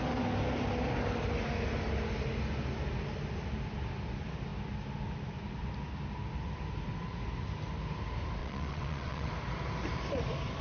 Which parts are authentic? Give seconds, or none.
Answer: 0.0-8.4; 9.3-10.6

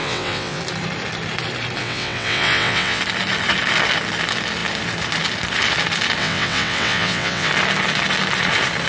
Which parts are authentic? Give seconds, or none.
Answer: 0.6-1.8; 3.0-6.2; 7.5-8.9

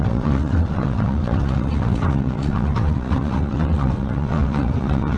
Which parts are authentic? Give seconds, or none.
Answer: none

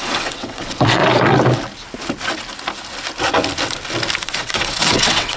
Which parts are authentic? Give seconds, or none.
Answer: 1.0-4.2

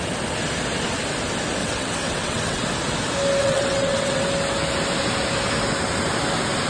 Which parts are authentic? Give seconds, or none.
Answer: 0.0-1.6; 2.6-3.4; 4.2-6.7